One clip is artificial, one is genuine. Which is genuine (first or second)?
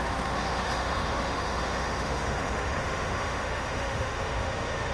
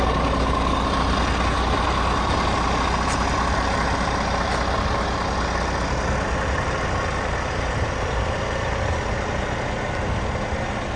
second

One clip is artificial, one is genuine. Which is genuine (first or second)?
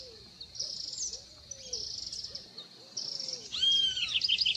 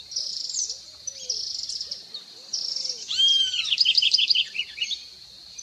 first